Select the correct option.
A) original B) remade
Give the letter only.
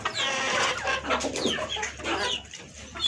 A